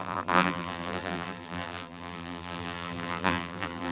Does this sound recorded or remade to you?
remade